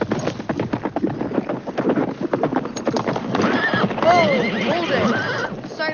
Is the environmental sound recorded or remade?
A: recorded